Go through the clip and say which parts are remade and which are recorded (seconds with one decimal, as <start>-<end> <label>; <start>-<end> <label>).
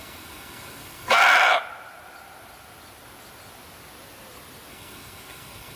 0.0-1.2 remade; 1.2-4.7 recorded; 4.7-5.8 remade